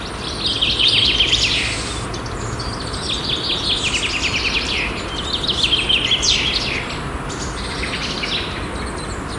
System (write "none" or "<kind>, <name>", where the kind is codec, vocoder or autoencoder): none